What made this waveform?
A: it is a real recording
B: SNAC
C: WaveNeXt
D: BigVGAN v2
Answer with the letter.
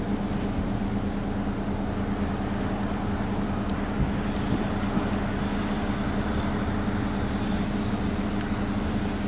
A